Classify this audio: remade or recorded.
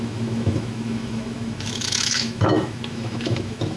remade